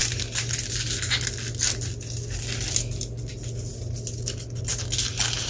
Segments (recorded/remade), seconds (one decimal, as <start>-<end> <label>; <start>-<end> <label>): 0.0-5.5 recorded